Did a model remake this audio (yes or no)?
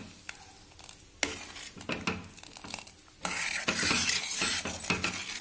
no